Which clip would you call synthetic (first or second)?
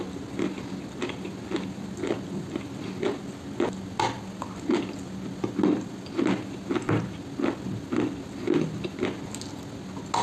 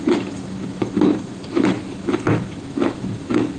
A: second